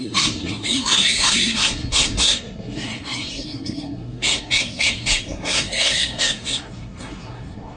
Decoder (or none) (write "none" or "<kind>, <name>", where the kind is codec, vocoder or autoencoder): codec, SNAC